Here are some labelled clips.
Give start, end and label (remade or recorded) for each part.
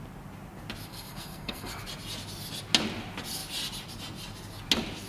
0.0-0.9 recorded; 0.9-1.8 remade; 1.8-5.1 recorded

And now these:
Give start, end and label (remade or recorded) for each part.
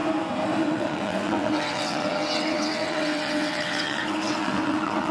0.0-0.6 recorded; 0.6-5.1 remade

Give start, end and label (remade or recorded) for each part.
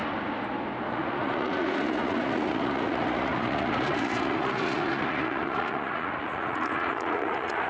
0.0-0.9 recorded; 0.9-7.7 remade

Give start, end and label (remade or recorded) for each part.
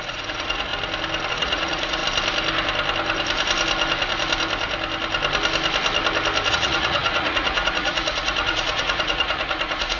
0.0-0.7 remade; 0.7-1.3 recorded; 1.3-2.0 remade; 2.0-6.5 recorded; 6.5-10.0 remade